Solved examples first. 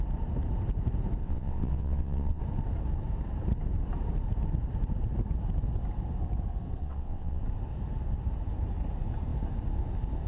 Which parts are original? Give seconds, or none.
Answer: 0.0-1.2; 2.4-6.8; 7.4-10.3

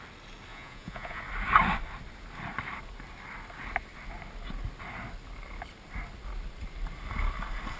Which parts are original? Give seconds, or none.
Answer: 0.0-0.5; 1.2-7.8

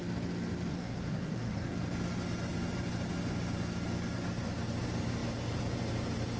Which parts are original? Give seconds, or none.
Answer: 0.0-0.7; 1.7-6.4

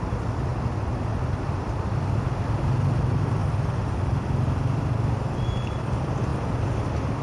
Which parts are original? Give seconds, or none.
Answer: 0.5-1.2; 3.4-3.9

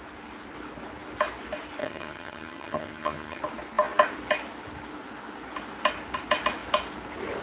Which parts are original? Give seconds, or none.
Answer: 0.0-1.8; 3.4-7.4

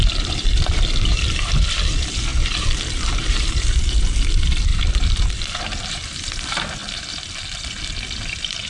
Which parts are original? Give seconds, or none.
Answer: 4.7-5.3

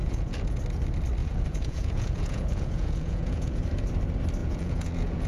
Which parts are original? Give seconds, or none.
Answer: 0.6-1.2; 3.6-4.4